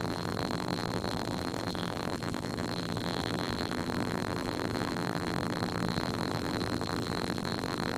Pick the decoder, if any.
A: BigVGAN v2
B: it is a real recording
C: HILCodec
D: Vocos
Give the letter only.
A